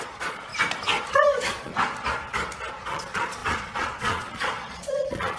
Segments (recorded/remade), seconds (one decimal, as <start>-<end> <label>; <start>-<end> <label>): 0.0-0.5 remade; 0.5-1.1 recorded; 1.1-1.7 remade; 1.7-2.7 recorded; 2.7-5.4 remade